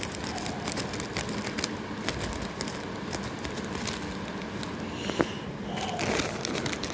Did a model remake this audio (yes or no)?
no